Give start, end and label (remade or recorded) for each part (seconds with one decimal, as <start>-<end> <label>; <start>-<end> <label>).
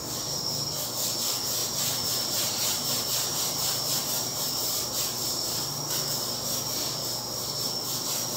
0.0-1.6 recorded; 1.6-5.7 remade; 5.7-8.4 recorded